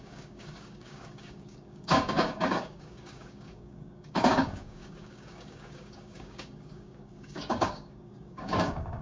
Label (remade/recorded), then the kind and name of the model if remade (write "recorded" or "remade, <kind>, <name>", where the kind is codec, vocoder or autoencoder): remade, codec, DAC